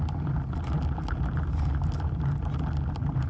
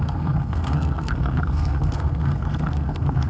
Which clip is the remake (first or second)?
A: second